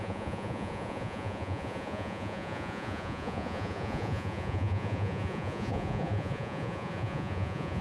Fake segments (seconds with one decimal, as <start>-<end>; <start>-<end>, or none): 0.0-7.8